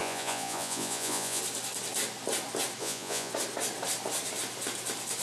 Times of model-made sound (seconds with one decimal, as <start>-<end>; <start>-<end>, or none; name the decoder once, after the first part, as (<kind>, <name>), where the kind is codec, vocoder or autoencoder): 0.0-1.4 (vocoder, Vocos); 2.8-3.3